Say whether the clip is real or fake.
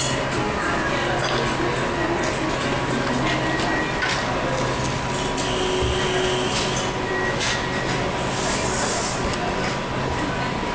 real